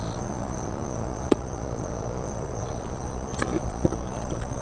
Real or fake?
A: fake